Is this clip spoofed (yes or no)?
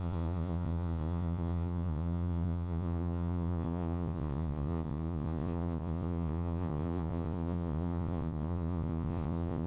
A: yes